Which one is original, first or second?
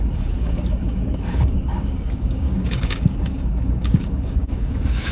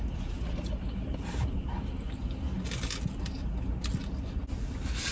second